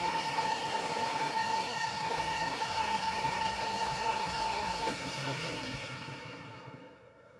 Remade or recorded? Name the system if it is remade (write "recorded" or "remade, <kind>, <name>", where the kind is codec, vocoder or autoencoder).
remade, codec, SNAC